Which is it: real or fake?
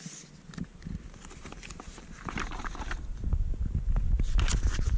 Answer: fake